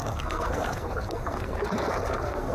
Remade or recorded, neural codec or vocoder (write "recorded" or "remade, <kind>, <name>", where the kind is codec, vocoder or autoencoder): remade, codec, SNAC